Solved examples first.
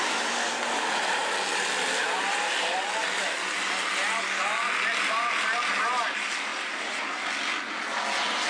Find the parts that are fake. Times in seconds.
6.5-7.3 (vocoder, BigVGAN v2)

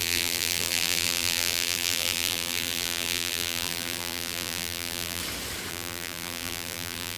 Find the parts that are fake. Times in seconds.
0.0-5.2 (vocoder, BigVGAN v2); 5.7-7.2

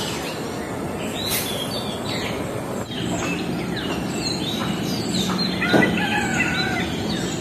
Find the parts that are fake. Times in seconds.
4.6-5.2 (vocoder, BigVGAN v2)

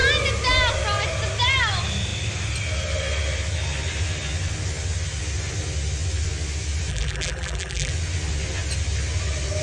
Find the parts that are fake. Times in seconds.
6.9-7.9 (vocoder, BigVGAN v2)